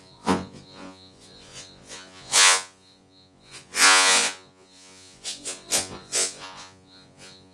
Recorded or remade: remade